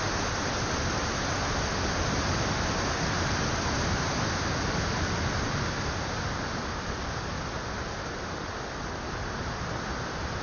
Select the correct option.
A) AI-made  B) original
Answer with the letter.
B